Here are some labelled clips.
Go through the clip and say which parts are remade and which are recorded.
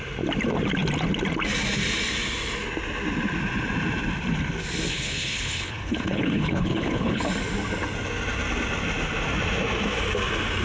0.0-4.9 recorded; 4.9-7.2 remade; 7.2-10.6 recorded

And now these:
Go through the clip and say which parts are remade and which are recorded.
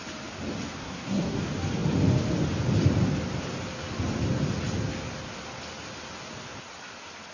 0.0-0.8 recorded; 0.8-1.4 remade; 1.4-7.3 recorded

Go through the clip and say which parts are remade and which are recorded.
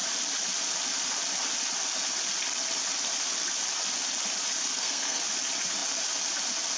0.0-4.6 recorded; 4.6-5.2 remade; 5.2-6.8 recorded